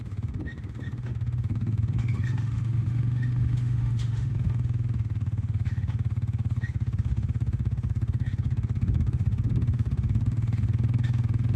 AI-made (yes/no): yes